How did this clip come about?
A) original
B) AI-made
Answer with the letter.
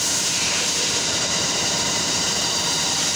B